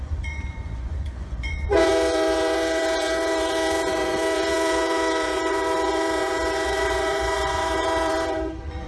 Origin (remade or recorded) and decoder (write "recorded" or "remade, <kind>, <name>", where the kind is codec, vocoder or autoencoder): remade, vocoder, Vocos